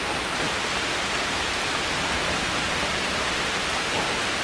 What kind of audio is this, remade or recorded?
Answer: remade